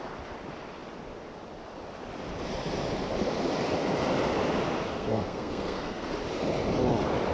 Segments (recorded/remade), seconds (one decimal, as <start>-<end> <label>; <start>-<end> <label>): 0.0-4.9 recorded; 4.9-6.1 remade; 6.1-7.3 recorded